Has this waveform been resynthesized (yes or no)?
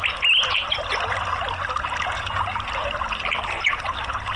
no